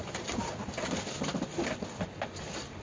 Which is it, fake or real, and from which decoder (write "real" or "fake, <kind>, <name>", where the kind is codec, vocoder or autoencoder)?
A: real